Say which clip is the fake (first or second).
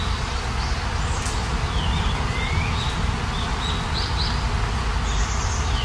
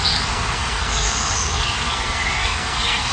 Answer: second